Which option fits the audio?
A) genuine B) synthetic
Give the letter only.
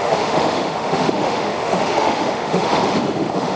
B